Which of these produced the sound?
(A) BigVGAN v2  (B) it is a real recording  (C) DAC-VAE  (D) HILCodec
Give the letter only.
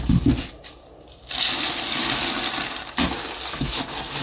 B